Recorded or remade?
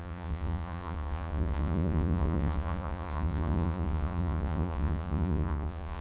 remade